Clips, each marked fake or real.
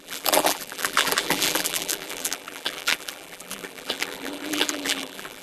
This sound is fake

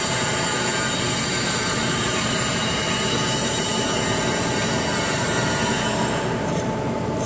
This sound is fake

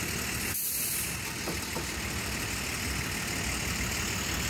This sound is real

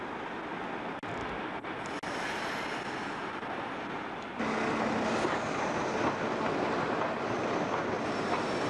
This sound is real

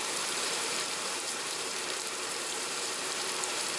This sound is fake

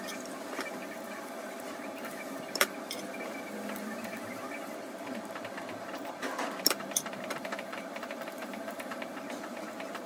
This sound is fake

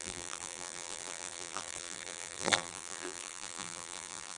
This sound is fake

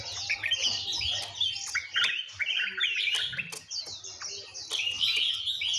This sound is real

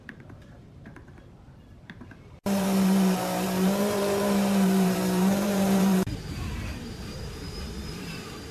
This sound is fake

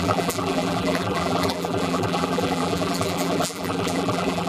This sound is fake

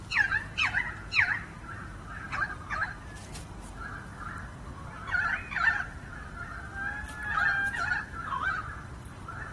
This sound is real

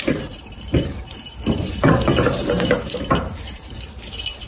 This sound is fake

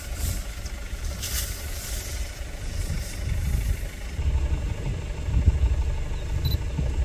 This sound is real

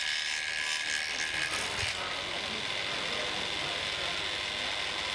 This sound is real